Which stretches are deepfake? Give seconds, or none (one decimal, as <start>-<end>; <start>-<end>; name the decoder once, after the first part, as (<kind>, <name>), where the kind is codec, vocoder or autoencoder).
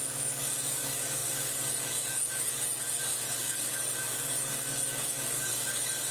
0.0-6.1 (codec, DAC)